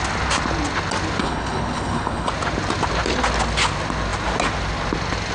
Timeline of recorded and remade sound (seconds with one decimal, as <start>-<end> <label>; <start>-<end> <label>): 0.0-1.2 recorded; 1.2-2.3 remade; 2.3-5.3 recorded